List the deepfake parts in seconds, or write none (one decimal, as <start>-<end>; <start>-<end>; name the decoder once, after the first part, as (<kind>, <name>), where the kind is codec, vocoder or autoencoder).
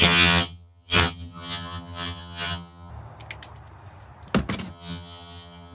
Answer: 0.0-2.9 (vocoder, HiFi-GAN); 4.7-5.7